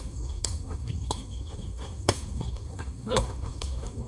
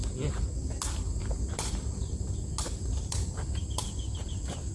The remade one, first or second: first